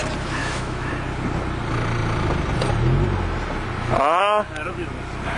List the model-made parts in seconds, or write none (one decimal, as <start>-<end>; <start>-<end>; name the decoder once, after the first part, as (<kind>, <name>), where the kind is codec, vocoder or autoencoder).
0.4-0.9 (autoencoder, DAC-VAE)